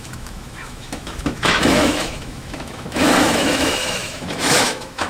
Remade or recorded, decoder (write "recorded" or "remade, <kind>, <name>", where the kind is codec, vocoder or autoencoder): remade, autoencoder, DAC-VAE